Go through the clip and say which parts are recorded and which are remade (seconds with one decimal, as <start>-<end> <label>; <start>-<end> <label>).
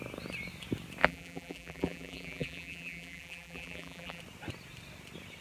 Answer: 0.0-1.0 recorded; 1.0-4.2 remade; 4.2-5.4 recorded